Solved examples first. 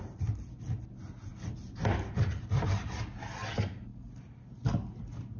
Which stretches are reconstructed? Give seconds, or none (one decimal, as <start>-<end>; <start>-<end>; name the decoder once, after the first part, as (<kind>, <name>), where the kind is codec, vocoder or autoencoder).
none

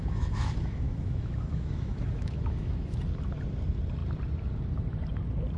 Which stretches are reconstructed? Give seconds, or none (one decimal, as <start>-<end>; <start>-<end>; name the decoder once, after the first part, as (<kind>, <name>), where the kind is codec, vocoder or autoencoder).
0.0-3.0 (autoencoder, DAC-VAE)

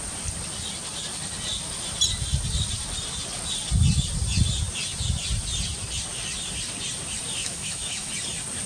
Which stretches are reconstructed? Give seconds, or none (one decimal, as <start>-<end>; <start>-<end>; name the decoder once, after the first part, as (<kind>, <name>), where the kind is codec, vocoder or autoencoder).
7.4-8.1 (autoencoder, DAC-VAE)

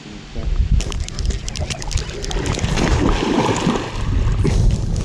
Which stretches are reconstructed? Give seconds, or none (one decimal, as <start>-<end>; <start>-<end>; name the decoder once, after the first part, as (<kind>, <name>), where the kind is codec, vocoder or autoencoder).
none

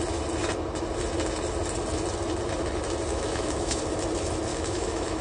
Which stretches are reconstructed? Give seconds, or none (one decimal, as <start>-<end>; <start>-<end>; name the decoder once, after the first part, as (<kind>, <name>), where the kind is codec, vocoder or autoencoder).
3.1-3.8 (autoencoder, DAC-VAE); 4.5-5.2

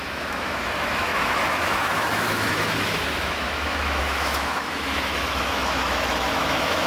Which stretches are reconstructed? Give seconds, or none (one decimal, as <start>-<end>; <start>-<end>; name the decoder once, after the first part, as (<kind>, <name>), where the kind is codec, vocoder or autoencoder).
0.0-6.9 (autoencoder, DAC-VAE)

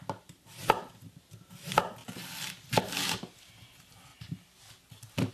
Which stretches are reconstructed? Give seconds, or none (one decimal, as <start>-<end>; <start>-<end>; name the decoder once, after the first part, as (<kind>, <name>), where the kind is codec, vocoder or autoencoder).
none